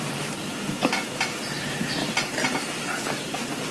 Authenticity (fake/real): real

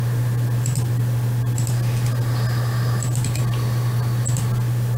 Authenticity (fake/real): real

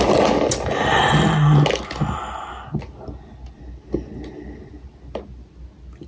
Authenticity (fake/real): real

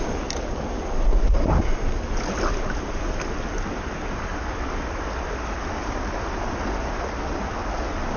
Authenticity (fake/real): real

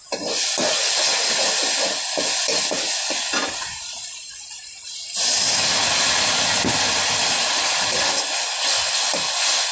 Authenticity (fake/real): real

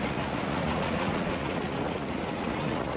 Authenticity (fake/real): fake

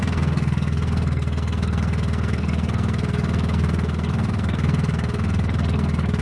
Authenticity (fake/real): fake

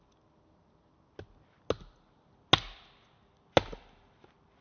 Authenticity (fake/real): real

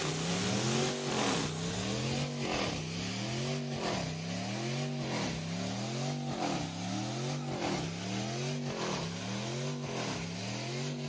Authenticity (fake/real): real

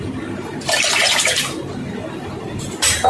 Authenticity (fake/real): fake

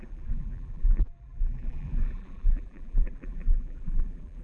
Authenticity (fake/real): fake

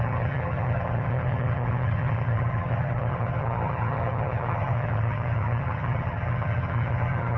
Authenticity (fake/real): fake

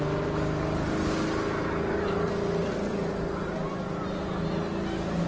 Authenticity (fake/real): real